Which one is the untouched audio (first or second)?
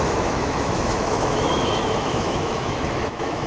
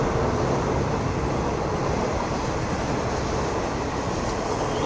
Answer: second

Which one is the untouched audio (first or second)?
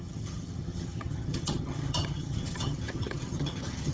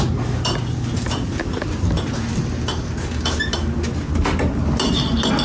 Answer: second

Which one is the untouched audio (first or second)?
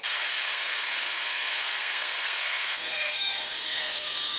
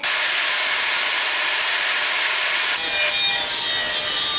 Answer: second